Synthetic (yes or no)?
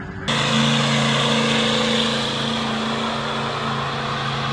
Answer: no